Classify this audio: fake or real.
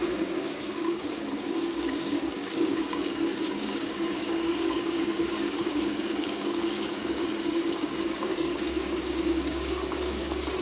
fake